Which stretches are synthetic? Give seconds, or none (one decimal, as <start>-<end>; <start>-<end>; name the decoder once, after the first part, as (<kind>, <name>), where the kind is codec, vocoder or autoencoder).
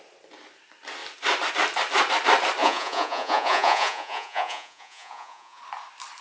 2.6-5.6 (vocoder, Vocos)